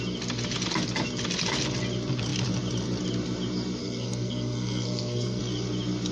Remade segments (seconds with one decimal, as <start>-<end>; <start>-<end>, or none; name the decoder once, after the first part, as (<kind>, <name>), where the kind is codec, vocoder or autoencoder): 3.8-5.4 (codec, SNAC)